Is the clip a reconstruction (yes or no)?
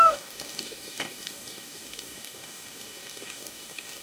yes